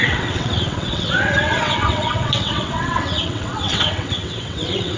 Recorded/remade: remade